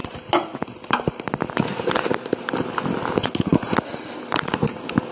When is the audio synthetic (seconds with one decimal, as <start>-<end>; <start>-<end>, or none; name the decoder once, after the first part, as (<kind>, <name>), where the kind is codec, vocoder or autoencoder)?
none